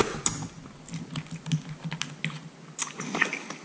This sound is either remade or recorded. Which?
recorded